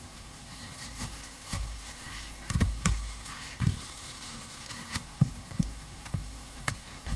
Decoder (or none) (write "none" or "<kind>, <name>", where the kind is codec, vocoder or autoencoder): codec, SNAC